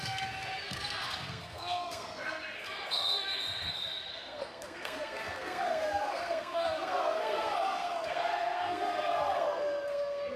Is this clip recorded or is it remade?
remade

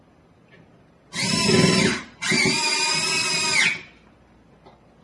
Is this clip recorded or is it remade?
recorded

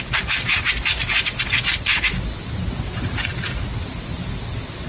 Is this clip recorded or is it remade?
recorded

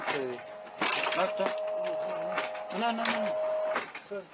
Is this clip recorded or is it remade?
recorded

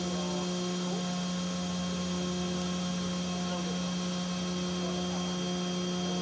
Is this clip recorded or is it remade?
recorded